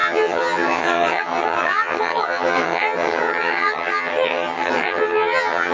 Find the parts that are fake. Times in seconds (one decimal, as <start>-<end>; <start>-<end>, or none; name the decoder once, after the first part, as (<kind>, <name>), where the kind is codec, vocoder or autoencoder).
0.0-5.7 (vocoder, HiFi-GAN)